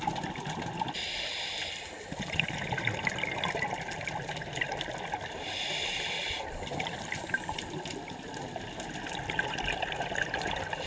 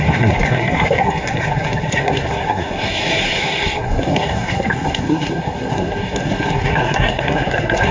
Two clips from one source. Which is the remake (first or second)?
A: second